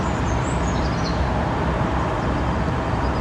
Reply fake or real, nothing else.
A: real